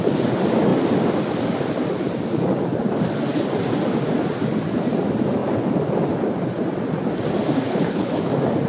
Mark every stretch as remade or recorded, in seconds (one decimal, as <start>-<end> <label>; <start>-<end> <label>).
0.0-7.7 recorded; 7.7-8.2 remade; 8.2-8.7 recorded